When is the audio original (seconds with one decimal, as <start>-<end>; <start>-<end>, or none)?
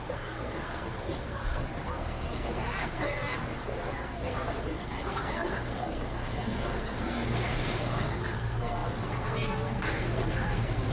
none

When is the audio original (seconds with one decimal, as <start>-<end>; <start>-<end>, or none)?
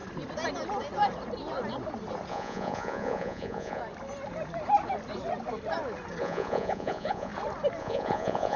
0.0-2.3; 3.8-6.2; 7.3-7.8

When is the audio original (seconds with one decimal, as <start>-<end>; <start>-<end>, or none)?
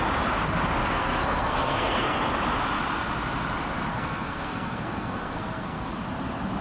0.0-0.8; 2.3-3.9; 6.0-6.6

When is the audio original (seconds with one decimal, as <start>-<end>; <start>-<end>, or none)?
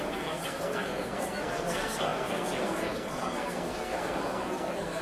none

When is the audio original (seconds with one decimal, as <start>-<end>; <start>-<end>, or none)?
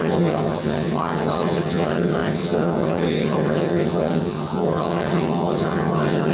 none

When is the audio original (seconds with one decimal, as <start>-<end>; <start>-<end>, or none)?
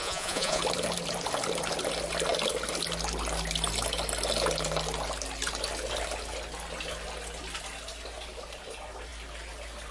0.6-9.9